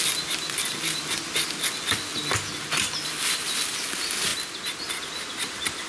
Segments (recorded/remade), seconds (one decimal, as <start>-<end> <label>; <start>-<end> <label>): 0.0-5.9 recorded